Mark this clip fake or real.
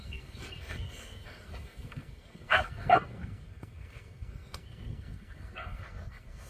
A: fake